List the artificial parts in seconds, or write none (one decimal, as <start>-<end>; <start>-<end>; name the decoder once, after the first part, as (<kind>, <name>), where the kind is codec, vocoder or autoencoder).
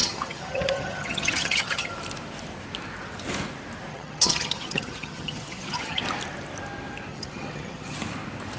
0.0-1.9 (vocoder, HiFi-GAN); 3.9-6.0; 7.1-8.0